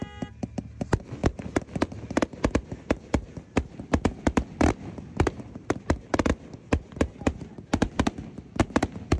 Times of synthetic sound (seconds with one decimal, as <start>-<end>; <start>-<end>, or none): none